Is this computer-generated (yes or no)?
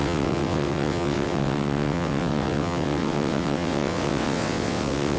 yes